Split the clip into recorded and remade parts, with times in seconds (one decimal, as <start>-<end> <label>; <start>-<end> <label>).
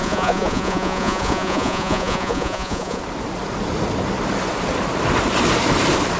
0.0-3.0 remade; 3.0-6.2 recorded